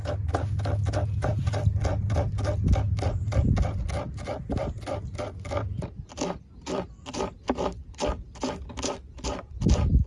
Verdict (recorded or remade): recorded